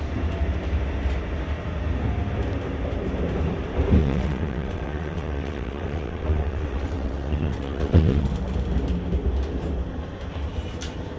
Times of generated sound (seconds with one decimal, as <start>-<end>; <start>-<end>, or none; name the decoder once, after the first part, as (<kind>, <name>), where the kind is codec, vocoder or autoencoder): 4.0-8.3 (vocoder, WaveNeXt)

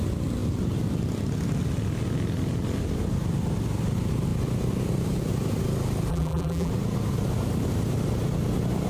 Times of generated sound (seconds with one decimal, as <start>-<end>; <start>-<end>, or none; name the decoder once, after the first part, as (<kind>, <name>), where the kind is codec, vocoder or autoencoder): 6.1-6.7 (vocoder, BigVGAN v2)

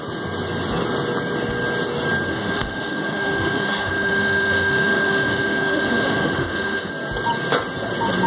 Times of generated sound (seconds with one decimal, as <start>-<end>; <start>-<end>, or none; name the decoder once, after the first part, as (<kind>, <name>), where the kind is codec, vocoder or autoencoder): 2.3-6.9 (autoencoder, DAC-VAE)

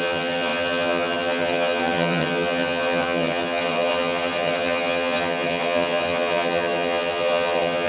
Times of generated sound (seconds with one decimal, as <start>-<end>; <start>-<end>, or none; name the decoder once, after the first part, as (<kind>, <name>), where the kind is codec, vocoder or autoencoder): 0.0-7.9 (vocoder, HiFi-GAN)

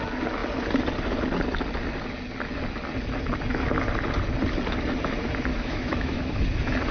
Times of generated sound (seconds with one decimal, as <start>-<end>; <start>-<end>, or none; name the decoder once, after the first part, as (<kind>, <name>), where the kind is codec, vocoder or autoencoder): 5.5-6.4 (autoencoder, DAC-VAE)